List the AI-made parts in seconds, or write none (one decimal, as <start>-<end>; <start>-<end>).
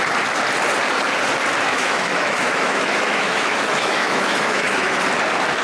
1.7-5.0